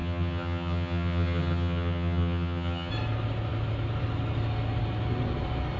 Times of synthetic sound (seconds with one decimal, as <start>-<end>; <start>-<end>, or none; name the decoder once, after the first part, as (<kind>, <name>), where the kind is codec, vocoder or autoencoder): 0.0-2.9 (vocoder, HiFi-GAN)